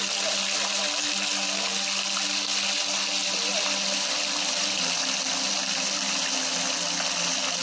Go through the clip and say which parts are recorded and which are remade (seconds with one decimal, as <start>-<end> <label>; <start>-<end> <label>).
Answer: 0.0-7.6 recorded